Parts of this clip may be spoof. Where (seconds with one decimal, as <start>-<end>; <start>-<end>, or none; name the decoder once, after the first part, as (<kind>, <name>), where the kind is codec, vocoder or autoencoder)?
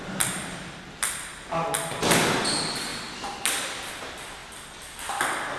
0.0-1.3 (vocoder, BigVGAN v2); 2.0-2.9; 3.6-5.6